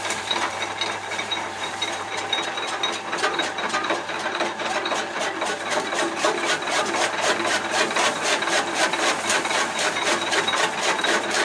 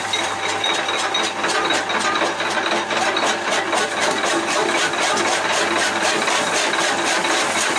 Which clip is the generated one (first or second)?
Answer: first